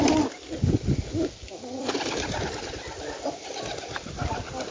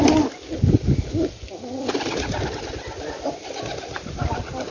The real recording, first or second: second